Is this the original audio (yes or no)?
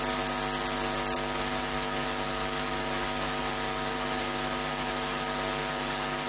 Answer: yes